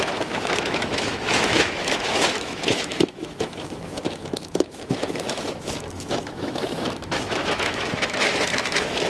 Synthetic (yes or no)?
yes